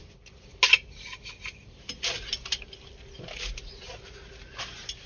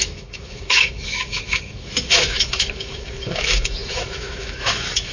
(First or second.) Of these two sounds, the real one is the first